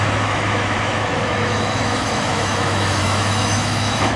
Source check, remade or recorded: remade